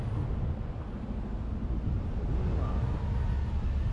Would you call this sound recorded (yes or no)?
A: yes